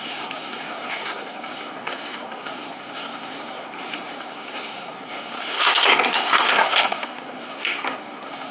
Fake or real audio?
fake